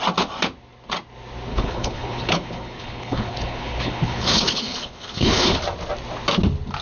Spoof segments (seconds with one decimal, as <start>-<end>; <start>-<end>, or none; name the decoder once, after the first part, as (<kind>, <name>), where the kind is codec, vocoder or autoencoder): 1.5-5.6 (codec, HILCodec)